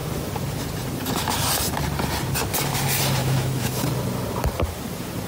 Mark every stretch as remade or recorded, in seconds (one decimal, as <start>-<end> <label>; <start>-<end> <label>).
0.0-3.2 recorded; 3.2-3.7 remade; 3.7-5.3 recorded

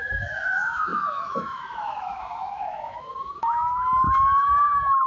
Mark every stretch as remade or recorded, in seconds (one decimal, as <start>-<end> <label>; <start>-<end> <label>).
0.0-5.1 remade

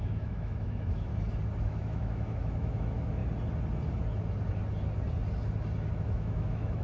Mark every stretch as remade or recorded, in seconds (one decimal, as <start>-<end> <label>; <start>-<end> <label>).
0.0-1.1 remade; 1.1-1.6 recorded; 1.6-3.2 remade; 3.2-5.9 recorded; 5.9-6.8 remade

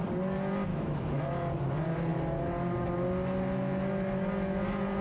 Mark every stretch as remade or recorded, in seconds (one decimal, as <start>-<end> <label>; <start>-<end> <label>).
0.0-0.7 recorded; 0.7-1.2 remade; 1.2-5.0 recorded

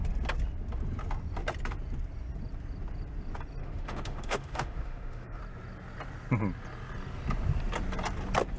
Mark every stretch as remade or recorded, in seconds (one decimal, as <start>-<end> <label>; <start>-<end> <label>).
0.0-3.6 recorded; 3.6-5.4 remade; 5.4-8.6 recorded